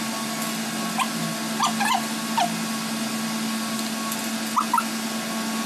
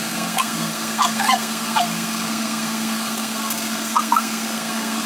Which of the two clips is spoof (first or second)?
second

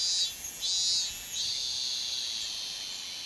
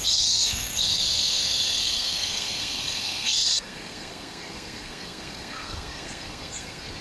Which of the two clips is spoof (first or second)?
second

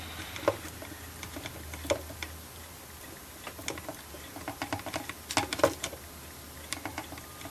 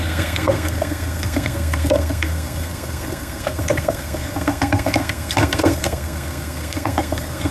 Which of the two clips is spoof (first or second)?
second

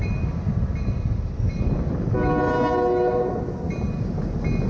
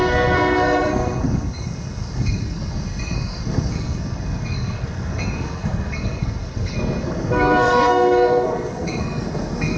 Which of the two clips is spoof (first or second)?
second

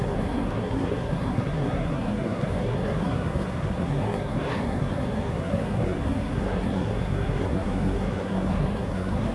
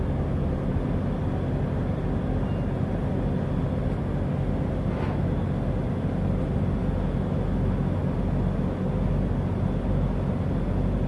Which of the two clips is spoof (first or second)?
first